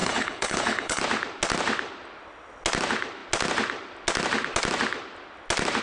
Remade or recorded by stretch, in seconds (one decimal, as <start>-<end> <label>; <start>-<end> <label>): 0.0-1.0 remade; 1.0-5.8 recorded